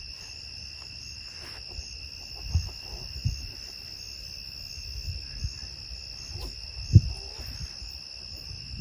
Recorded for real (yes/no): yes